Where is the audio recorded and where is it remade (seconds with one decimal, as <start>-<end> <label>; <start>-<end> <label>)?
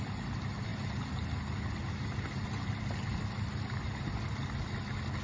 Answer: 0.0-5.2 recorded